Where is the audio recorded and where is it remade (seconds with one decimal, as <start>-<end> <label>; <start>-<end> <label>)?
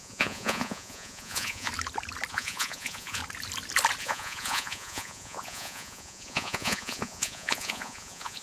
0.0-1.7 remade; 1.7-2.3 recorded; 2.3-3.2 remade; 3.2-4.0 recorded; 4.0-8.4 remade